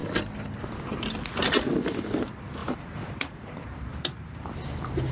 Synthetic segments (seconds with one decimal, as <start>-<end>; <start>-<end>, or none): 2.6-4.5